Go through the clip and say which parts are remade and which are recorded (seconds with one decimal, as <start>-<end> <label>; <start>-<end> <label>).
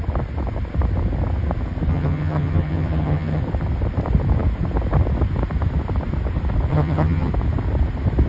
0.0-1.9 recorded; 1.9-3.4 remade; 3.4-6.7 recorded; 6.7-7.3 remade; 7.3-8.3 recorded